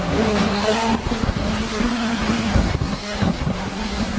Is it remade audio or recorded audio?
remade